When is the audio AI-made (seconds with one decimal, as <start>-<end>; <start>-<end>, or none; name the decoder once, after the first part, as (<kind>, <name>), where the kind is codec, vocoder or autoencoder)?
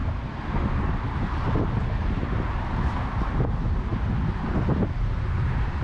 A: none